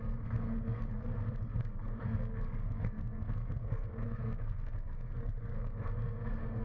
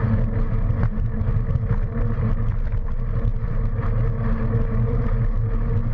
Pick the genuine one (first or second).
second